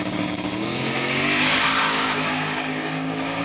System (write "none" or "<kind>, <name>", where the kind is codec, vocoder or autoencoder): codec, DAC